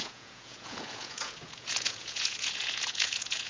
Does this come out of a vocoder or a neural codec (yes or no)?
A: yes